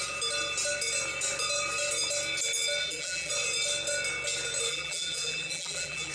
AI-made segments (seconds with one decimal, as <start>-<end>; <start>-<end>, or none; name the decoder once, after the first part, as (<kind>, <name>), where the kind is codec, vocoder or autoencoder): 2.8-3.3 (vocoder, BigVGAN v2); 4.7-6.1